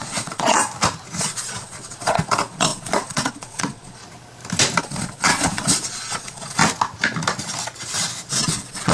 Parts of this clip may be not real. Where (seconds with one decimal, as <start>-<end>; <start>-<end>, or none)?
0.0-0.6; 1.2-4.0; 4.8-6.6; 8.3-8.9